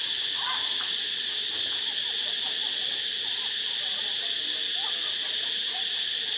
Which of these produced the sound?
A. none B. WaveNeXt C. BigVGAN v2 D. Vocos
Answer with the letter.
A